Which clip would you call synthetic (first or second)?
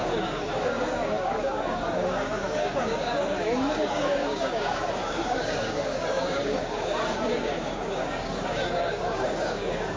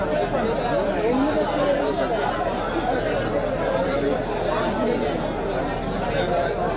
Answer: first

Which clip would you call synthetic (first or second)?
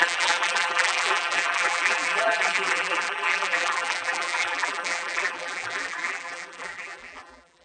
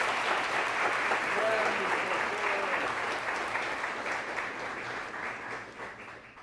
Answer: first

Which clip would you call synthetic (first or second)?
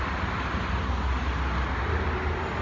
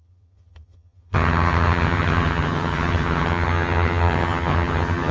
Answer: second